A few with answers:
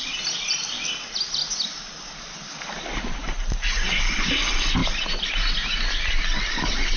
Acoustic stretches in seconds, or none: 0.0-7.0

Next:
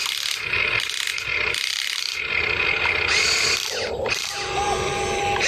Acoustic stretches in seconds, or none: 0.0-5.5

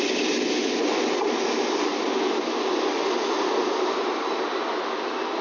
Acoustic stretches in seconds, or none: 0.0-5.4

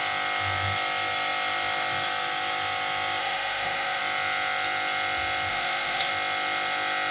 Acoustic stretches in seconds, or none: 0.0-3.2; 4.0-5.5; 6.1-7.1

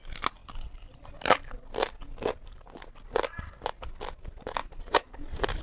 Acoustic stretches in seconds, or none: 0.0-4.6

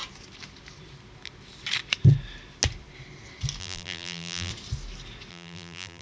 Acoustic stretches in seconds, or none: 0.0-3.6; 4.5-5.3

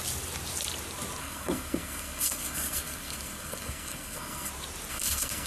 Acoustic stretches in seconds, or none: 0.0-1.2; 4.5-4.9